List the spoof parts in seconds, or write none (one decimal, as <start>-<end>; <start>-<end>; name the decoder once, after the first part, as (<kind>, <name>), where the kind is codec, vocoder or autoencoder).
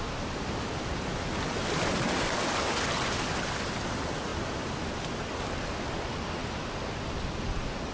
none